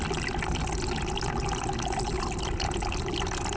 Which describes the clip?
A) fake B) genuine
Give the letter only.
B